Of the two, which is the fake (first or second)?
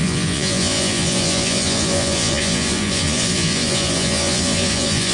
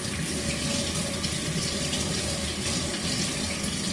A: first